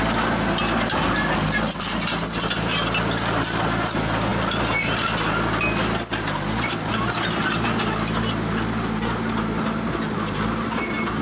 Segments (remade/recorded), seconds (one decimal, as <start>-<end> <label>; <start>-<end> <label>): 0.0-11.2 recorded